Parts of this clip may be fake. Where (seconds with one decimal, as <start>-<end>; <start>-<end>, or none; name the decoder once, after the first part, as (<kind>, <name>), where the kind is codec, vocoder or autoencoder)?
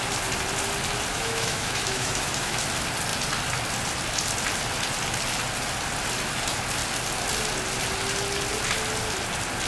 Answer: 1.1-2.6 (autoencoder, DAC-VAE)